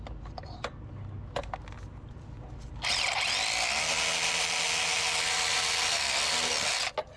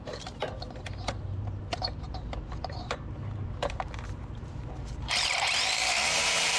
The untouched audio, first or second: first